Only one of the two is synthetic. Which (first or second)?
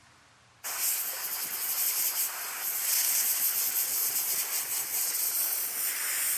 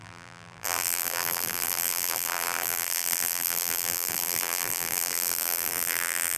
second